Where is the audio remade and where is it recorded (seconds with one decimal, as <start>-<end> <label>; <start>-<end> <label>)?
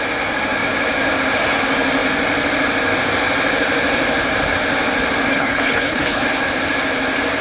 0.0-5.3 recorded; 5.3-6.2 remade; 6.2-7.4 recorded